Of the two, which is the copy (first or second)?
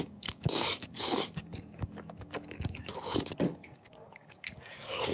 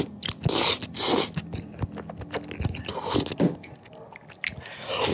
first